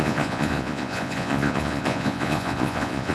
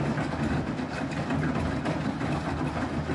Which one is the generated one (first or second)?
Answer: first